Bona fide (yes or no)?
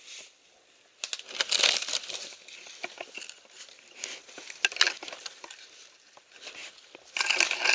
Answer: yes